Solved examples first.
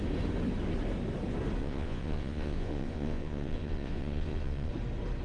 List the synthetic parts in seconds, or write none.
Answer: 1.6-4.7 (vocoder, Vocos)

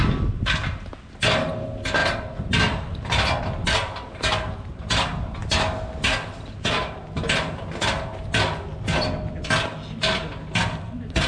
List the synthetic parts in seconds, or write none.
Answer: none

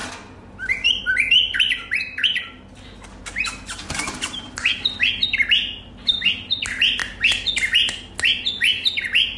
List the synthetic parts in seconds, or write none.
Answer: none

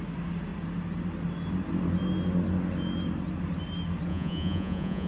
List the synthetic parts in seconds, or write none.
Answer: 4.1-5.1 (vocoder, Vocos)

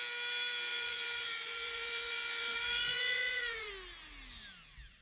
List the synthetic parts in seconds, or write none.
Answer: 0.7-3.7 (vocoder, Vocos)

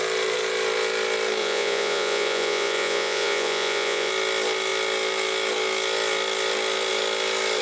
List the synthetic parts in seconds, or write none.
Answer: 1.4-4.1 (vocoder, Vocos)

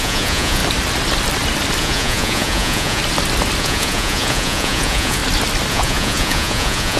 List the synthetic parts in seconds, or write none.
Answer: 0.0-0.6 (vocoder, Vocos); 1.8-3.0; 3.6-5.2; 5.7-7.0

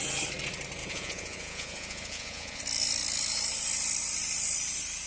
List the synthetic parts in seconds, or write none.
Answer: 0.8-2.6 (vocoder, Vocos)